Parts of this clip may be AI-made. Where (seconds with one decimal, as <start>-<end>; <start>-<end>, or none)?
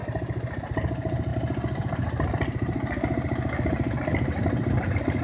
1.3-4.4